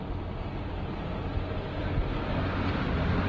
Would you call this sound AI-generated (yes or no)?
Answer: no